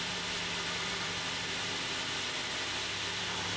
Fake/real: fake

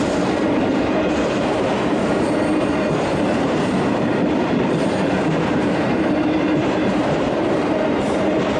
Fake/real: fake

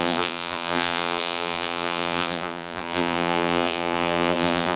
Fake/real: fake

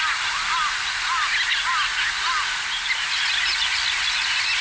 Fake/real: real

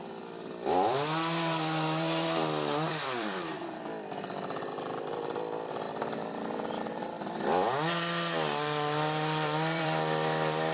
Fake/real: fake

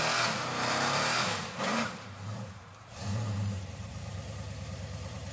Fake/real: fake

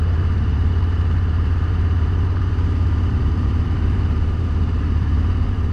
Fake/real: fake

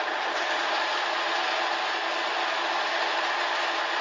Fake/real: fake